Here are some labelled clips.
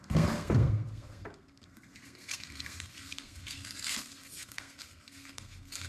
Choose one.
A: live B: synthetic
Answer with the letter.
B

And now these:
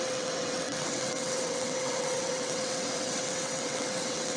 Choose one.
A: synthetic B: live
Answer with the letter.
A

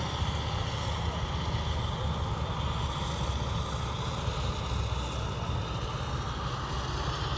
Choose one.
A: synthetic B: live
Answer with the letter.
B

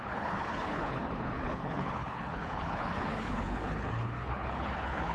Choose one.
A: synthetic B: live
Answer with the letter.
A